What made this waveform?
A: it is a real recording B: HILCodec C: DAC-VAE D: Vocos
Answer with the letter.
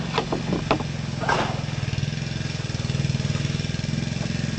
A